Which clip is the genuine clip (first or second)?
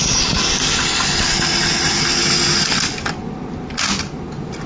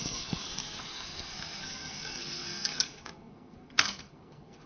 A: first